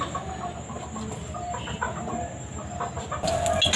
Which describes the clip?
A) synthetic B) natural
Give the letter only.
B